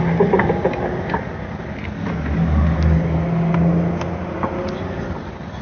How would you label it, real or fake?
real